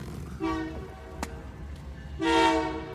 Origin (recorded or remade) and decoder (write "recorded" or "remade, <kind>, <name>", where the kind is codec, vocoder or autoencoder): recorded